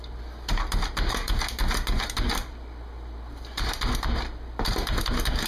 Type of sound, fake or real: real